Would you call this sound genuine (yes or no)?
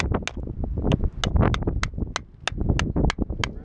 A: yes